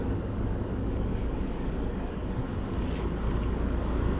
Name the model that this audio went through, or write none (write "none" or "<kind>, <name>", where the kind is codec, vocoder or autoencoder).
codec, DAC